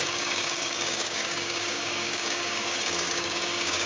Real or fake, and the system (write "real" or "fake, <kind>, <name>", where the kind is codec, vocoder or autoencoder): fake, codec, DAC